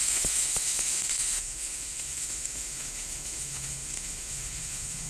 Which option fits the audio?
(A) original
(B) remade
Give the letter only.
B